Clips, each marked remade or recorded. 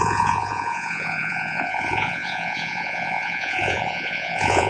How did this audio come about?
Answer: remade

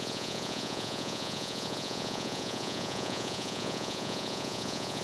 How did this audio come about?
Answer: remade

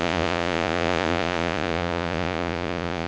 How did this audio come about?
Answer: remade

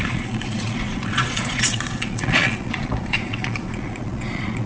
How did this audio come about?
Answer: remade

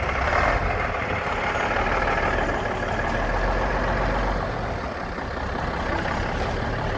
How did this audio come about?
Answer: recorded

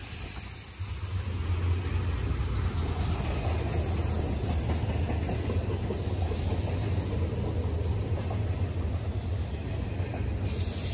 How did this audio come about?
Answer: recorded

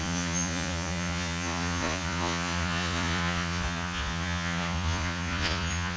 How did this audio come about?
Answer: remade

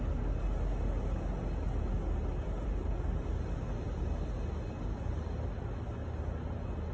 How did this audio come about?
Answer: recorded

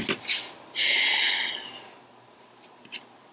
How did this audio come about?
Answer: recorded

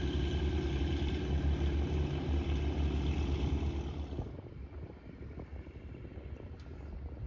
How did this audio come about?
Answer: recorded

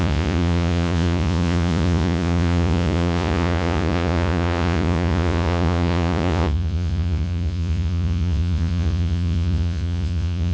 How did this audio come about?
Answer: remade